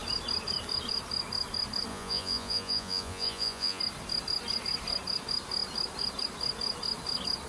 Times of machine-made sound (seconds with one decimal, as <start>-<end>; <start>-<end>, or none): 1.9-3.8